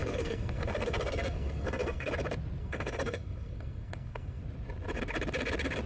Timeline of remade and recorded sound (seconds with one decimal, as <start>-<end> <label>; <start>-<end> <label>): 0.0-2.1 remade; 2.1-2.6 recorded; 2.6-4.4 remade; 4.4-5.9 recorded